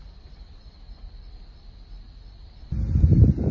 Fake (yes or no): no